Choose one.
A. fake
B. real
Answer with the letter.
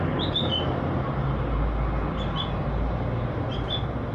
B